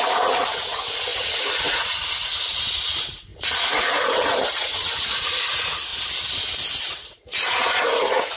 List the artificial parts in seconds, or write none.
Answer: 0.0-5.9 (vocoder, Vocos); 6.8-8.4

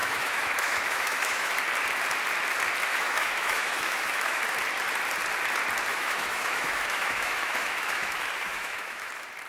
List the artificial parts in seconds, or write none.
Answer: 0.0-1.6 (autoencoder, DAC-VAE); 2.9-4.4; 5.9-9.1

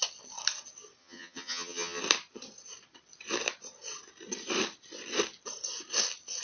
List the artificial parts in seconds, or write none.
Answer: 1.0-2.0 (vocoder, HiFi-GAN)

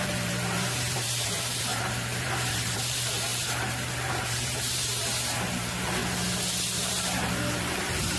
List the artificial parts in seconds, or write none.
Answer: 0.0-6.0 (vocoder, BigVGAN v2); 7.6-8.2

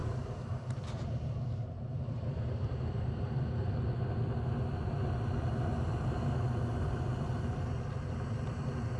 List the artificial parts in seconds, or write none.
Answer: 0.0-3.7 (vocoder, BigVGAN v2)

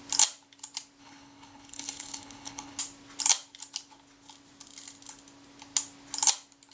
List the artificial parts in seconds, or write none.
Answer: 1.0-2.8 (codec, HILCodec)

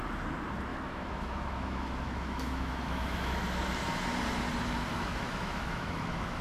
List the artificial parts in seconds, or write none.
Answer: 0.7-3.4 (autoencoder, DAC-VAE); 4.9-6.4